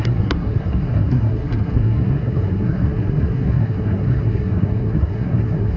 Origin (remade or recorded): remade